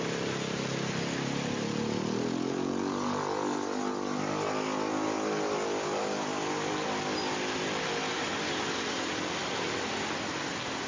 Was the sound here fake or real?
real